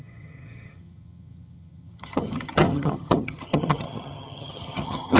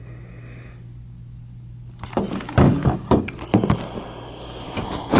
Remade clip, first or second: first